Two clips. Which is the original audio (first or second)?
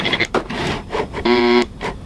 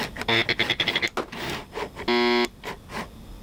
second